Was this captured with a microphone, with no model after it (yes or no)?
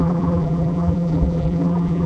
no